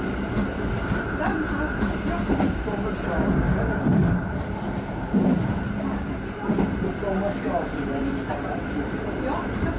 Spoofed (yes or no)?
no